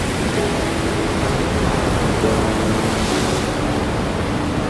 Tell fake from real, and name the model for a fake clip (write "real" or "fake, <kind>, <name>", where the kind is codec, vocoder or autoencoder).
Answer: real